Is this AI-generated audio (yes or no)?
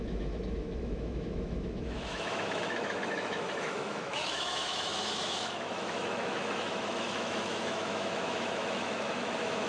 yes